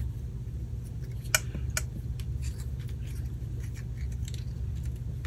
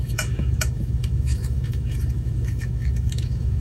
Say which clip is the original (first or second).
first